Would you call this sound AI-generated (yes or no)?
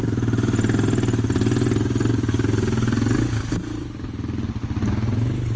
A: no